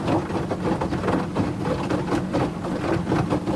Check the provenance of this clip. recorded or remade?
recorded